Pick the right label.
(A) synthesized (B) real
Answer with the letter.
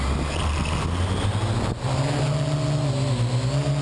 B